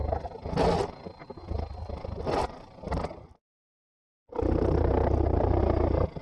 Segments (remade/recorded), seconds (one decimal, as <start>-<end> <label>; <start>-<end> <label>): 0.0-3.9 recorded; 3.9-5.6 remade; 5.6-6.2 recorded